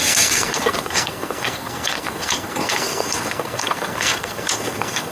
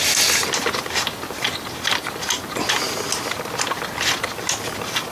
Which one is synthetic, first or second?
first